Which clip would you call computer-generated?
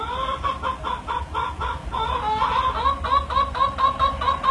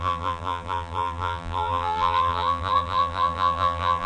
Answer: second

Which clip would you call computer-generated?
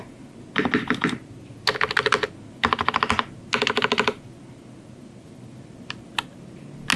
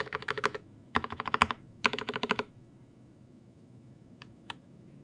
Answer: second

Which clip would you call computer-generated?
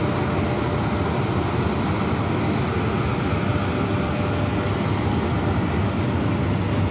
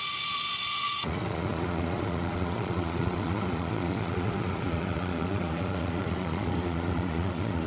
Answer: second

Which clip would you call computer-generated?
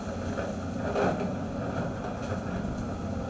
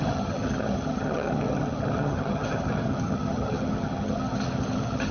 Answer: second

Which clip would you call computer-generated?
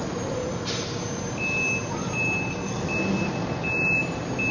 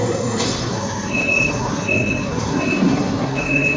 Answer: second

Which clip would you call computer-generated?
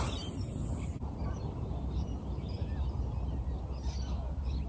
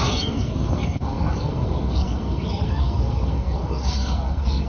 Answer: second